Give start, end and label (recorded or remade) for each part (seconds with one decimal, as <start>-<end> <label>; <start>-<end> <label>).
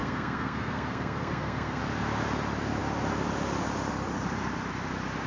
0.0-1.8 remade; 1.8-5.3 recorded